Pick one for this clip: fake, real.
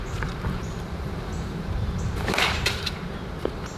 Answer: fake